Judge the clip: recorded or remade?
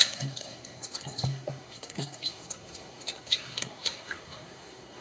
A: remade